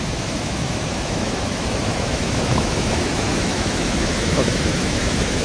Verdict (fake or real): fake